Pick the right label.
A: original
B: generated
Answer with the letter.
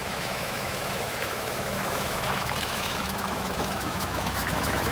B